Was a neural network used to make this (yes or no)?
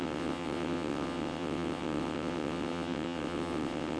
yes